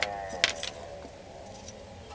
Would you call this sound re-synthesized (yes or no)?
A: no